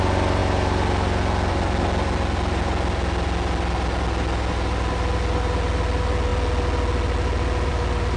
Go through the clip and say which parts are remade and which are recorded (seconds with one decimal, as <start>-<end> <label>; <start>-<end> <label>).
0.0-8.2 recorded